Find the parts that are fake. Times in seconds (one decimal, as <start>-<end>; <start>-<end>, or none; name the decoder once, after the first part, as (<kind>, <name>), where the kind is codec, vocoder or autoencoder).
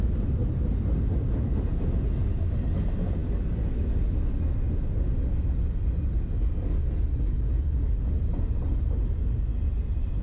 none